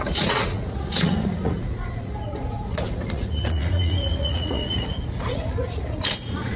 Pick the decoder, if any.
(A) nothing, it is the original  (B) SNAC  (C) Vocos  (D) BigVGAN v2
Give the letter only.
C